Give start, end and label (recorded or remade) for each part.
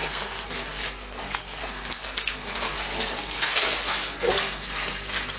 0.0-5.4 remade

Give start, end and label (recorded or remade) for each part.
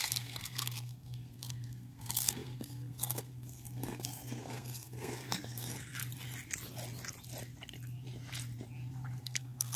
0.0-6.0 remade; 6.0-9.2 recorded; 9.2-9.8 remade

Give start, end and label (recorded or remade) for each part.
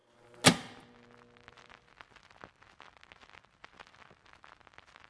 0.0-5.1 recorded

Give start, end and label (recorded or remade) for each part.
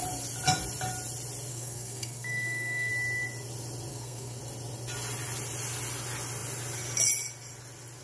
0.0-1.5 recorded; 1.5-2.9 remade; 2.9-3.9 recorded; 3.9-4.4 remade; 4.4-8.0 recorded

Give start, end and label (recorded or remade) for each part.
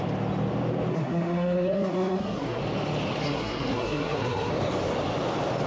0.0-0.9 recorded; 0.9-2.6 remade; 2.6-3.2 recorded; 3.2-4.5 remade; 4.5-5.7 recorded